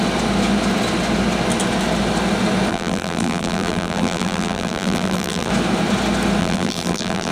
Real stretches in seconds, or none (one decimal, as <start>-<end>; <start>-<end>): 0.0-2.7; 5.5-6.4